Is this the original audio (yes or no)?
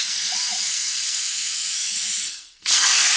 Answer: no